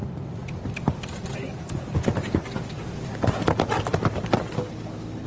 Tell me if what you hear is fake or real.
real